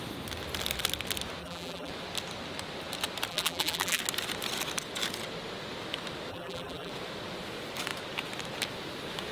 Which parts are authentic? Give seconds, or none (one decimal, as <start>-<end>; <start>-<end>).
0.0-1.4; 1.9-3.3; 4.0-6.3; 6.9-9.3

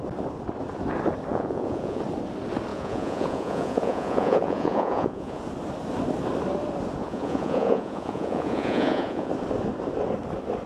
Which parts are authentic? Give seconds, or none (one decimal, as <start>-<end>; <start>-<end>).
0.0-1.3; 2.0-2.7; 5.4-7.0; 9.3-10.7

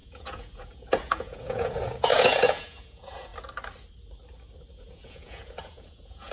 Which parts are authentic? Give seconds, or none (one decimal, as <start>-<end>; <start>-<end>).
3.3-4.7